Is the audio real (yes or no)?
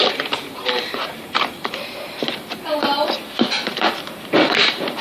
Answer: no